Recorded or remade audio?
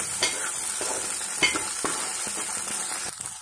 recorded